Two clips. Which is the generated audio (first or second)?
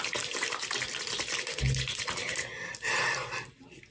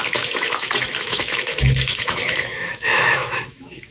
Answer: second